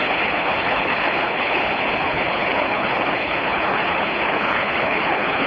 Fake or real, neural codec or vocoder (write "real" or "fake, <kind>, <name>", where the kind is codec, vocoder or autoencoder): fake, codec, HILCodec